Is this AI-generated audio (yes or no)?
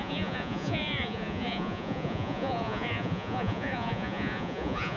yes